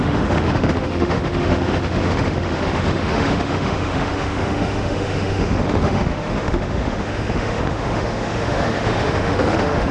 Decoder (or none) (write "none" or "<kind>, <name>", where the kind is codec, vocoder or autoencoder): autoencoder, DAC-VAE